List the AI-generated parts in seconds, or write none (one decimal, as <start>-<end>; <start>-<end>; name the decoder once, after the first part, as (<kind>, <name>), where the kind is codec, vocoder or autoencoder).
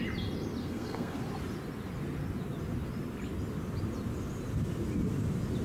0.6-1.2 (codec, SNAC)